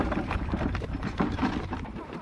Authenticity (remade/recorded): remade